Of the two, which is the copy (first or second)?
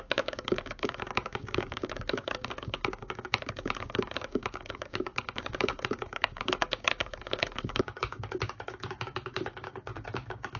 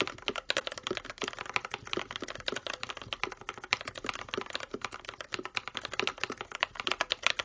first